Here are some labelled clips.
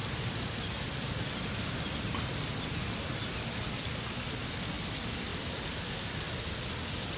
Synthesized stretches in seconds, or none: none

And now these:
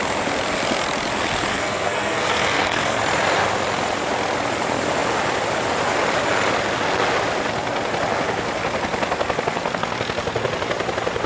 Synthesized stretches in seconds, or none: 1.5-3.0 (codec, SNAC)

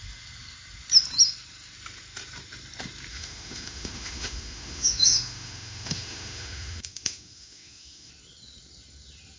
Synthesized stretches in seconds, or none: 3.1-8.1 (autoencoder, DAC-VAE)

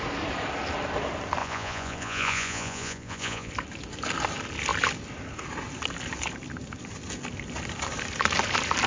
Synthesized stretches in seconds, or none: 1.4-3.5 (vocoder, Vocos)